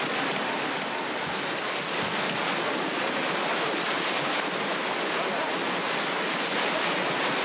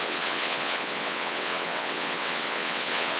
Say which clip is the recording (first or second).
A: first